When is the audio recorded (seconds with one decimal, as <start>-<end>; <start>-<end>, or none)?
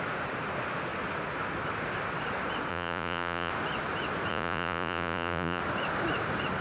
0.0-2.7; 3.5-4.3; 5.6-6.6